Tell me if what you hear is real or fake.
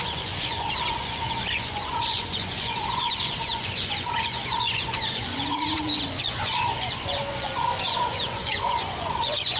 fake